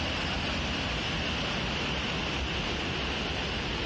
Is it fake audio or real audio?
real